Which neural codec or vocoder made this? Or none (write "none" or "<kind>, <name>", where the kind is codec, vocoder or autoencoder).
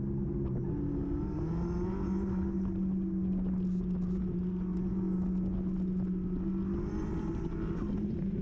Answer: none